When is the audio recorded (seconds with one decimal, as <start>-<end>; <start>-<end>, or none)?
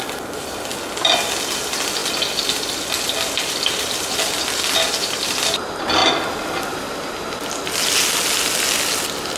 0.0-9.4